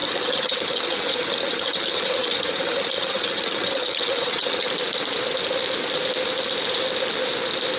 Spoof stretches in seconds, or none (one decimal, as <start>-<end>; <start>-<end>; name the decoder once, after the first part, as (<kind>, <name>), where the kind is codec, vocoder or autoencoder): 0.0-4.7 (vocoder, HiFi-GAN)